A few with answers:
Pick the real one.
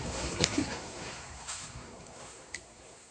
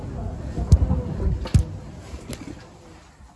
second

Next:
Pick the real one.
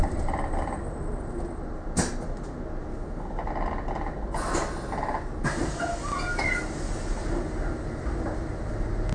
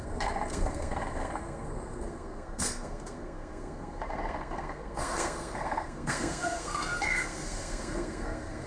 first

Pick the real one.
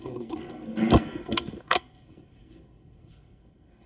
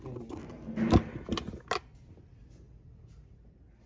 second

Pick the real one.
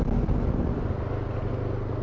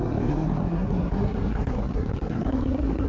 first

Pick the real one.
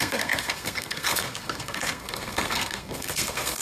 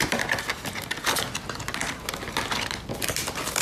second